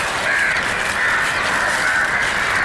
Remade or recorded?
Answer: recorded